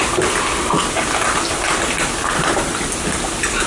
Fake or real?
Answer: real